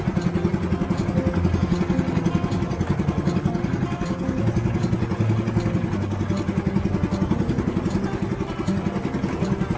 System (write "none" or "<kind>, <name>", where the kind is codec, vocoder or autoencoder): none